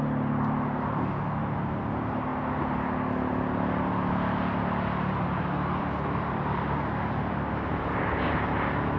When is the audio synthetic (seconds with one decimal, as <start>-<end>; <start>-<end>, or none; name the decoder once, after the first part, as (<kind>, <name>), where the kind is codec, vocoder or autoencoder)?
none

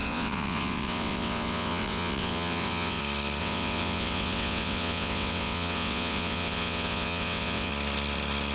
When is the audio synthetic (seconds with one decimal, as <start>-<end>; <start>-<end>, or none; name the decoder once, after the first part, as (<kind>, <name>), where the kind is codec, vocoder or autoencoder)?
0.0-3.0 (vocoder, WaveNeXt); 3.4-7.7

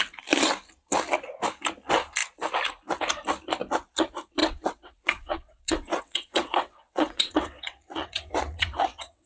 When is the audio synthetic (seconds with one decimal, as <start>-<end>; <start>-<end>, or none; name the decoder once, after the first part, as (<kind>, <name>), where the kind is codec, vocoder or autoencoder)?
4.4-9.3 (vocoder, WaveNeXt)

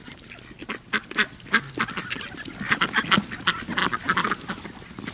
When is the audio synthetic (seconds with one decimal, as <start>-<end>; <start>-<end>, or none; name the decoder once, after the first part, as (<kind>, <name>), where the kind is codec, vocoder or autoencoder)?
none

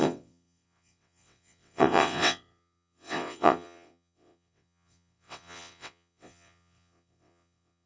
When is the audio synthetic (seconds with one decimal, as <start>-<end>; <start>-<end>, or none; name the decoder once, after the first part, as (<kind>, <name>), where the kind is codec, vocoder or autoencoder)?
0.0-7.9 (vocoder, WaveNeXt)

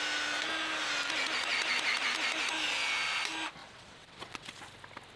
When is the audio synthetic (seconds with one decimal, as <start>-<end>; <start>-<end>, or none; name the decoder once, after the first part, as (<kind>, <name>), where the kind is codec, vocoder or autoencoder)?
3.6-4.5 (vocoder, WaveNeXt)